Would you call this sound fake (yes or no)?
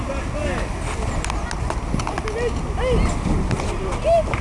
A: no